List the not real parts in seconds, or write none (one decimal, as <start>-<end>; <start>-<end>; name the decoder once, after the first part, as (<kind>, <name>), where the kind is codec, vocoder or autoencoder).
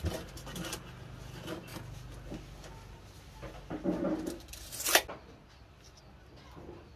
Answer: none